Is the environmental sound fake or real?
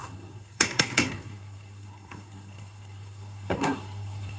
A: fake